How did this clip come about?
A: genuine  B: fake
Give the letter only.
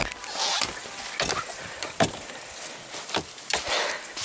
A